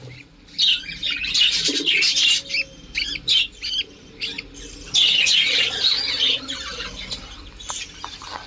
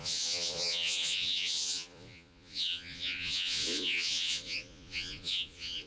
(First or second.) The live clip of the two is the first